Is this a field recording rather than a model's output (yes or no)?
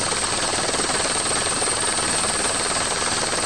yes